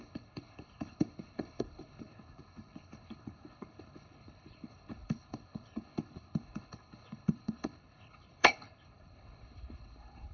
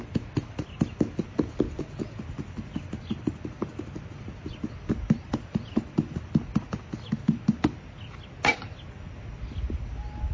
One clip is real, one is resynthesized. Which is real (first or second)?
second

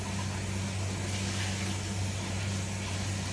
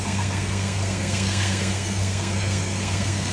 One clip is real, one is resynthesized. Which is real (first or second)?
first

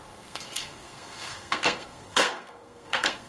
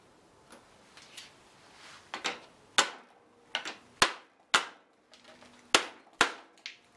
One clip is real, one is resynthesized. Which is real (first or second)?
second